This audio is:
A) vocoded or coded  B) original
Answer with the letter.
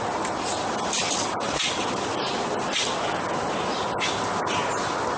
B